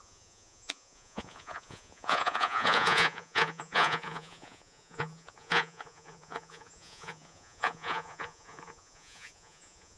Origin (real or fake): fake